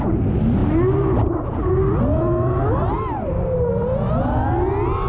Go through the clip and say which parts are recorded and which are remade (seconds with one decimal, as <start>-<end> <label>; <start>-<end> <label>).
0.0-5.1 recorded